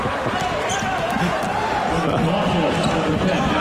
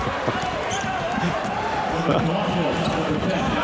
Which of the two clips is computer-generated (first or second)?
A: second